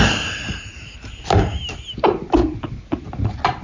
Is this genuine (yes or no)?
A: yes